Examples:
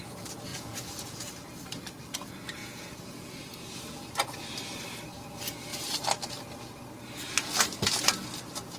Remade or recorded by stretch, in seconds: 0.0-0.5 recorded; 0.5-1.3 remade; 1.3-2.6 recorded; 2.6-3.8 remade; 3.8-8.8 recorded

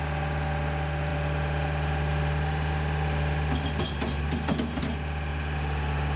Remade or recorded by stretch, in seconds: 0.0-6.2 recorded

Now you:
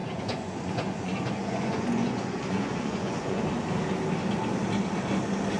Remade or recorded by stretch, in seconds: 0.0-3.4 remade; 3.4-5.6 recorded

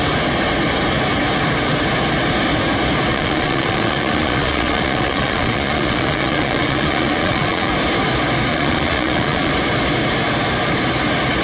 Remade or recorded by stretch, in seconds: 0.0-3.1 recorded; 3.1-7.7 remade; 7.7-8.5 recorded; 8.5-9.5 remade; 9.5-11.4 recorded

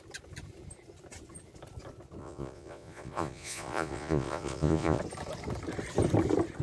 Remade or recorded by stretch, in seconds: 0.0-2.2 recorded; 2.2-5.0 remade; 5.0-6.6 recorded

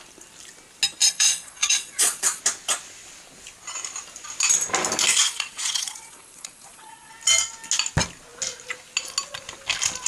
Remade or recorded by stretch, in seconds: 0.0-1.0 recorded; 1.0-2.4 remade; 2.4-5.1 recorded; 5.1-7.1 remade; 7.1-10.1 recorded

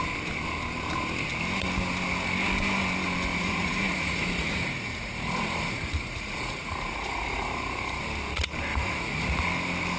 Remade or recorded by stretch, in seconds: 0.0-3.3 recorded; 3.3-8.0 remade; 8.0-8.7 recorded; 8.7-9.4 remade; 9.4-10.0 recorded